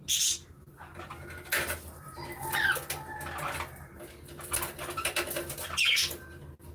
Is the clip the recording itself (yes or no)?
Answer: yes